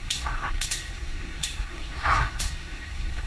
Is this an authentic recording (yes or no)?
no